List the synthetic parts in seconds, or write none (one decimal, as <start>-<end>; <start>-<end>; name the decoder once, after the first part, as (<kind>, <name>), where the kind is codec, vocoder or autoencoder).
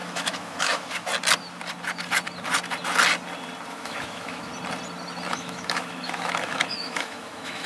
0.0-1.1 (autoencoder, DAC-VAE); 3.7-4.5; 5.3-7.7